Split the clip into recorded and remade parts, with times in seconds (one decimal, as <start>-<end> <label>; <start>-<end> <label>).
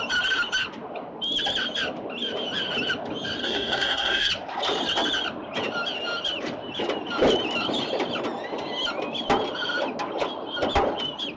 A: 0.0-3.4 recorded; 3.4-4.3 remade; 4.3-11.4 recorded